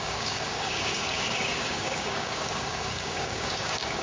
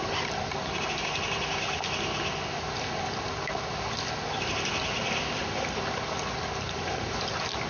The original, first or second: second